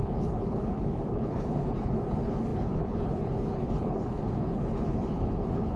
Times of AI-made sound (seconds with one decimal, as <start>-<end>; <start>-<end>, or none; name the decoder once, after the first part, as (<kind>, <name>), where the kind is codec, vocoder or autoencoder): 0.0-5.8 (codec, HILCodec)